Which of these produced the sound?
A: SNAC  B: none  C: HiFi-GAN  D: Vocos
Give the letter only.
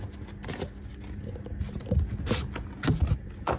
B